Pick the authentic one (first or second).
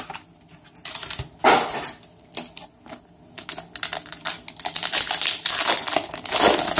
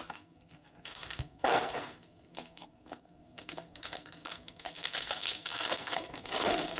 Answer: first